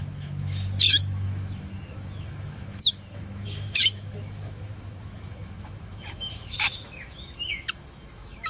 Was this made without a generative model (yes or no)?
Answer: no